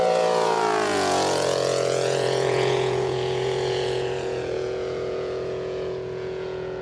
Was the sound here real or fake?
fake